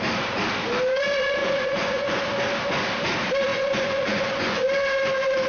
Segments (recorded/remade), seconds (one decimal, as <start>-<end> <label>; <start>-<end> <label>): 0.0-1.4 recorded; 1.4-2.2 remade; 2.2-3.5 recorded; 3.5-4.7 remade; 4.7-5.5 recorded